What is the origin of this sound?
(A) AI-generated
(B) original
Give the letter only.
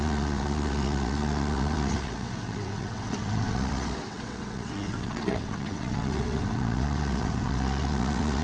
A